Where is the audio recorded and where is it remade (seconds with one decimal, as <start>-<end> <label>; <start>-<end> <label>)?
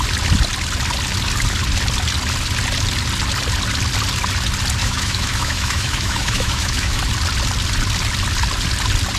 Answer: 0.0-4.8 recorded; 4.8-7.0 remade; 7.0-9.2 recorded